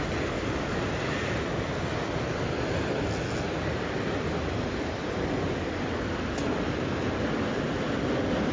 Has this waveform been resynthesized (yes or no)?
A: no